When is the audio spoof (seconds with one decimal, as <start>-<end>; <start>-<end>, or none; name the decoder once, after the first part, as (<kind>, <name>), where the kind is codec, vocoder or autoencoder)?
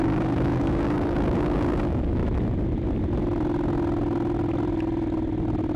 0.0-2.2 (codec, DAC)